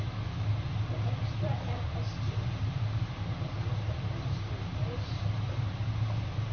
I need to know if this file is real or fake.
real